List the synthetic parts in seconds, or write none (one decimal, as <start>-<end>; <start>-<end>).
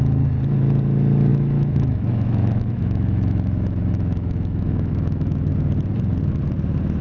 1.3-5.5